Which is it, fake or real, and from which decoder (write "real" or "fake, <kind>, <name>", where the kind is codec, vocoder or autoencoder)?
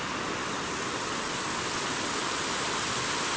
real